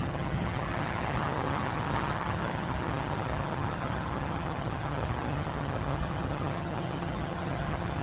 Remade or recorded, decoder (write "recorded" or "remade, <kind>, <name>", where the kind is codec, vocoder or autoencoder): remade, vocoder, HiFi-GAN